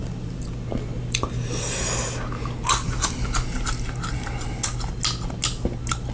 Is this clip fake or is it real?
real